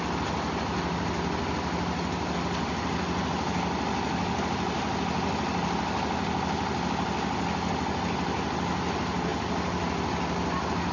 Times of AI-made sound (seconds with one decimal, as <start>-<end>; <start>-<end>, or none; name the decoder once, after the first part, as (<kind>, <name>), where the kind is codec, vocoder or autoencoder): none